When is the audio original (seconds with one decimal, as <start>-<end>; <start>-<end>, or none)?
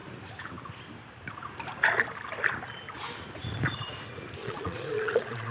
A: 0.0-4.4